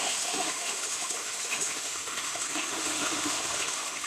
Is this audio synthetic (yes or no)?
yes